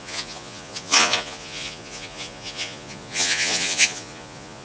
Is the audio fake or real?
fake